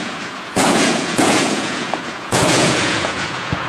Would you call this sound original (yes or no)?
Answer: no